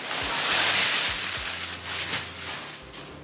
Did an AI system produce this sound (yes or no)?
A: no